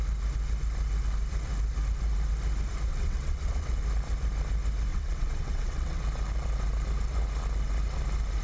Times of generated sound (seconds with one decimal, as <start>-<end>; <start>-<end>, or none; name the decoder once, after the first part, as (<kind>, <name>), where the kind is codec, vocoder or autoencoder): 2.9-3.8 (vocoder, WaveNeXt); 4.9-6.0